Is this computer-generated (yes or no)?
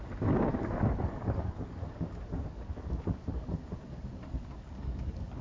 yes